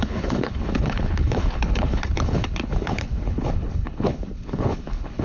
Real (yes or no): no